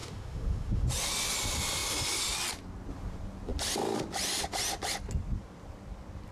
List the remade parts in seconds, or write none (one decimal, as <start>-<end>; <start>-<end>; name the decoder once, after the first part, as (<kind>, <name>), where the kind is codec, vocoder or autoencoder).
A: 0.0-0.9 (autoencoder, DAC-VAE)